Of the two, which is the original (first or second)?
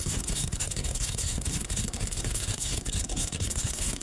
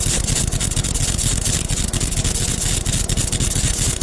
second